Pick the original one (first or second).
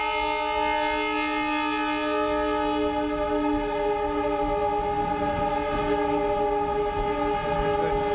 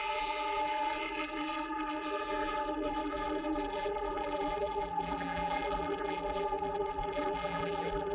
first